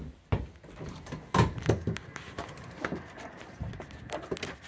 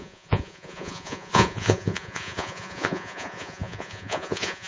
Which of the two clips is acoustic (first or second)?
first